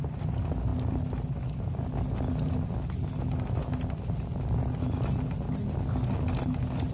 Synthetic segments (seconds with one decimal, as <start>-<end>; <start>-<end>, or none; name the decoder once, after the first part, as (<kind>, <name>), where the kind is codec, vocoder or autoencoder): none